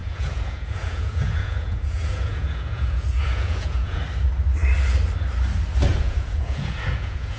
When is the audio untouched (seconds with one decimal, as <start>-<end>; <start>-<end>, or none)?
4.0-5.9